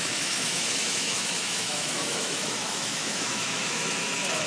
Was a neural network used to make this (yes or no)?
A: yes